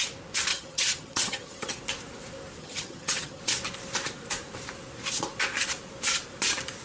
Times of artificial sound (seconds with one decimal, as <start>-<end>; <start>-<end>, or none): 0.5-1.8; 2.6-3.4